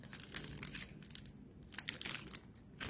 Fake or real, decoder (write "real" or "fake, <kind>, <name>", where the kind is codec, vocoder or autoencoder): real